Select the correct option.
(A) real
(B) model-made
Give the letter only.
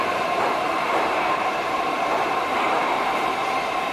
B